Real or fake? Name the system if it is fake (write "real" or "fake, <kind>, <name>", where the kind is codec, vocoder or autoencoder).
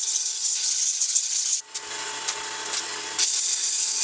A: real